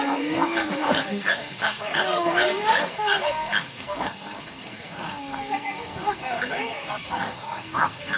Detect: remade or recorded remade